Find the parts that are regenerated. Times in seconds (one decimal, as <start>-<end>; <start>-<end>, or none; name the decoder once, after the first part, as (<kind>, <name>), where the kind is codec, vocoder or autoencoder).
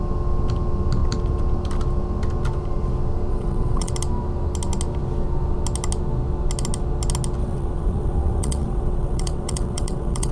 3.3-3.9 (vocoder, WaveNeXt); 7.4-10.3